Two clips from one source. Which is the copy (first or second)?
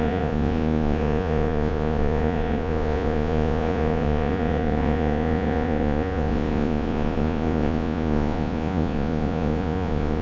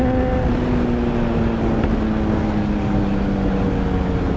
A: first